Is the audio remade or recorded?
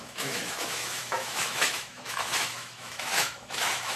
remade